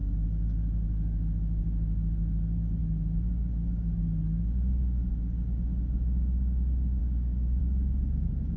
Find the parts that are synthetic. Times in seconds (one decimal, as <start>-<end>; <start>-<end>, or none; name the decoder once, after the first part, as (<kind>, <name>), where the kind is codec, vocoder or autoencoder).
7.0-7.6 (codec, DAC)